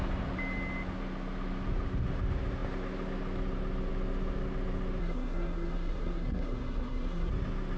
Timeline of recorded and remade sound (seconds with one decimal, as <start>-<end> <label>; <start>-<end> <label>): 0.0-5.0 recorded; 5.0-7.3 remade; 7.3-7.8 recorded